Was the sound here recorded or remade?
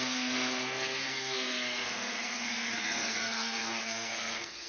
remade